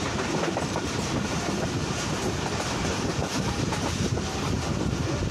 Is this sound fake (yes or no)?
yes